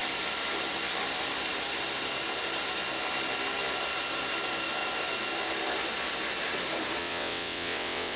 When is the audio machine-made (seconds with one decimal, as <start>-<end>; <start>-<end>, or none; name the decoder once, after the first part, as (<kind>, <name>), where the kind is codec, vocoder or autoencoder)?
7.0-8.2 (vocoder, WaveNeXt)